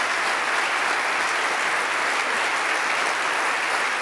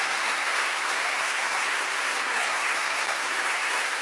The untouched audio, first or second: first